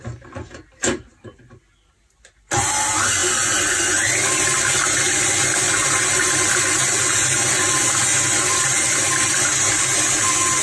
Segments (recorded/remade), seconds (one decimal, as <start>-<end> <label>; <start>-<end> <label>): 0.0-10.6 recorded